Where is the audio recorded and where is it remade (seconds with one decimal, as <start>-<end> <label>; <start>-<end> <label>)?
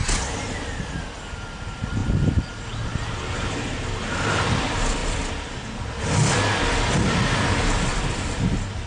0.0-8.9 recorded